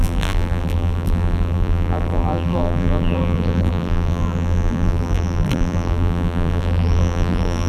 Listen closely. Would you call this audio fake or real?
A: fake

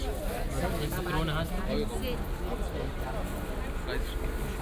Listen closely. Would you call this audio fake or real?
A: real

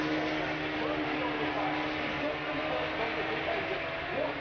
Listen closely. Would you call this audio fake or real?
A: real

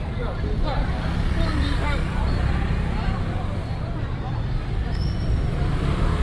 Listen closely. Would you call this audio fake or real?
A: real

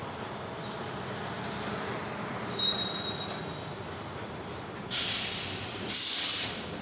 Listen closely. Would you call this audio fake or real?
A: fake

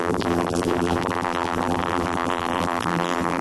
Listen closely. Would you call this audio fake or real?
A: fake